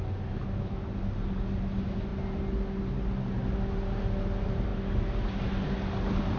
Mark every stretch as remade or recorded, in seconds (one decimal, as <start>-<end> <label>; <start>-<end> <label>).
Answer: 0.0-6.4 recorded